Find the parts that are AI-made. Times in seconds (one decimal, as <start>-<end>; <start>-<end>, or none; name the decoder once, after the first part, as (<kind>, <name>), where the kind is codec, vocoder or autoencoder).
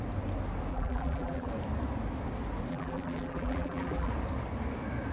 0.7-1.5 (vocoder, BigVGAN v2); 2.7-4.1